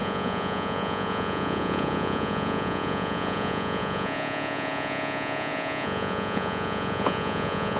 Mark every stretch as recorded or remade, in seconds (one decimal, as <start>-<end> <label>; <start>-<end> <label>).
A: 0.0-7.8 remade